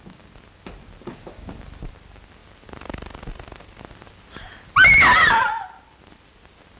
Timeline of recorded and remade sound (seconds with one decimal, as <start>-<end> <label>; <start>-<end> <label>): 0.0-2.4 recorded; 2.4-3.9 remade; 3.9-5.1 recorded; 5.1-6.8 remade